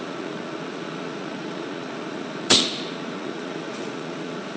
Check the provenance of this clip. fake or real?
fake